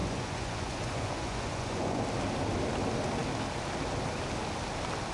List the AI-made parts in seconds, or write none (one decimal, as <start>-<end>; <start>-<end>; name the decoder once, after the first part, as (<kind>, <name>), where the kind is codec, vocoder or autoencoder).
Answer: 0.0-2.0 (vocoder, Vocos)